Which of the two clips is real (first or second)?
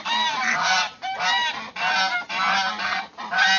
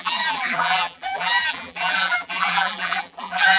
first